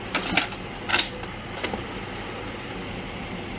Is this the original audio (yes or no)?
yes